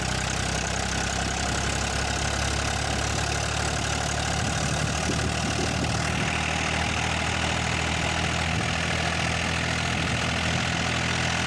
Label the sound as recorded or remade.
recorded